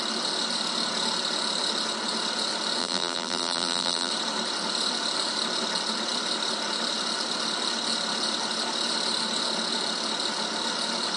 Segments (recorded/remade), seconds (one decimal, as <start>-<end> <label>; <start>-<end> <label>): 0.0-2.8 recorded; 2.8-4.1 remade; 4.1-11.2 recorded